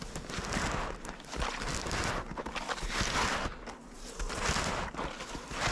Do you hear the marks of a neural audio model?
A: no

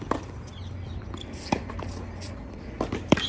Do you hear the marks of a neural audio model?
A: yes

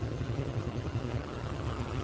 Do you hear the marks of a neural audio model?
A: yes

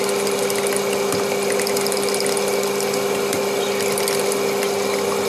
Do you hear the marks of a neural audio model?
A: no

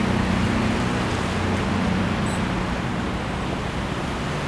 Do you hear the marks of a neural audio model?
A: no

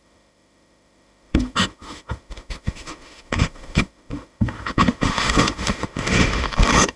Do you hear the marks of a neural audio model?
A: yes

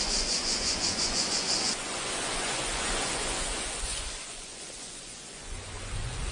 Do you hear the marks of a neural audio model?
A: yes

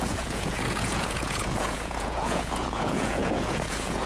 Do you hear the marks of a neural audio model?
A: yes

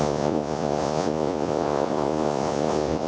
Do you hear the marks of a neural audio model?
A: yes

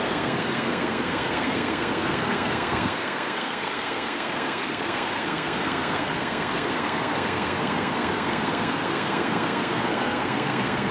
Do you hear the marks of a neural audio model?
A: yes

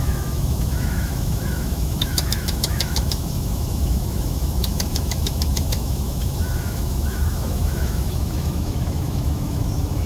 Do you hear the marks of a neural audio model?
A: yes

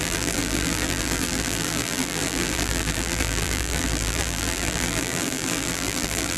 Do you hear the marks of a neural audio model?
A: yes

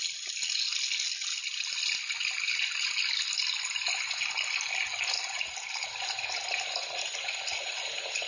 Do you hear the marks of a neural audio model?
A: no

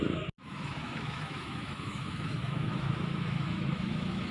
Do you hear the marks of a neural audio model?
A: yes